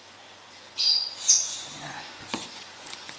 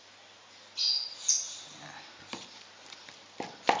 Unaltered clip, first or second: second